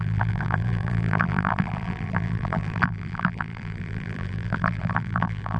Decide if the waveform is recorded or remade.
remade